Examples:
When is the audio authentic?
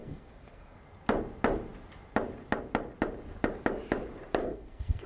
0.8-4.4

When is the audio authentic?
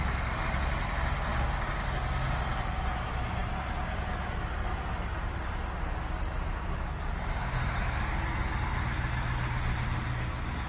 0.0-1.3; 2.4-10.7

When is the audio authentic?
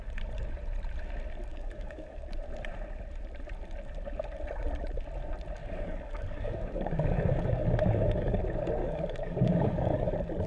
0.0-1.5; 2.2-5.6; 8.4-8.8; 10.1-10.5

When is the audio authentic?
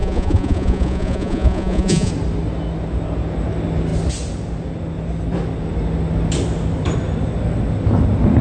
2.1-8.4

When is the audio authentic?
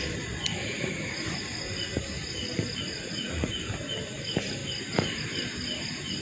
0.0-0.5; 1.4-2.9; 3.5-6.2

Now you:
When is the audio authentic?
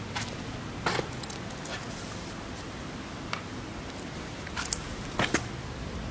0.0-6.1